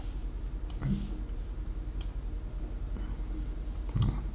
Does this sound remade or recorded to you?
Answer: recorded